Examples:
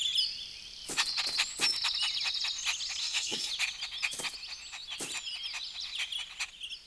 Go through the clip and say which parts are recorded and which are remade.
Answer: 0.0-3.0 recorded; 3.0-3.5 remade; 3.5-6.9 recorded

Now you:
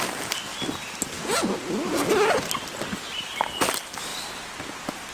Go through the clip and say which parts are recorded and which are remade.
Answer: 0.0-5.1 recorded